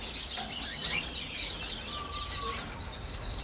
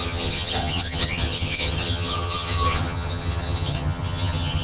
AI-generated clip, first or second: second